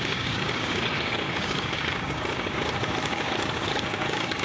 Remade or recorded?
remade